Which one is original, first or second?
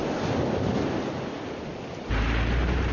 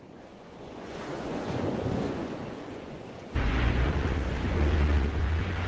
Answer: first